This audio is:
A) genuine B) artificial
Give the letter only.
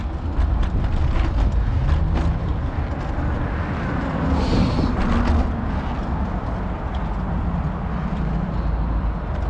A